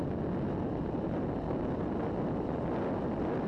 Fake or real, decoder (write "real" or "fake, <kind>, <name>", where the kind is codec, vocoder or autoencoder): real